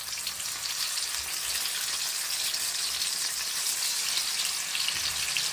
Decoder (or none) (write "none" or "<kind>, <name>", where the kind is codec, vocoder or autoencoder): none